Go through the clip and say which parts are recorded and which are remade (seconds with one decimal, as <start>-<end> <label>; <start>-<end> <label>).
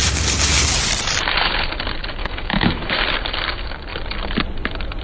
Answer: 0.0-2.2 recorded; 2.2-2.9 remade; 2.9-5.0 recorded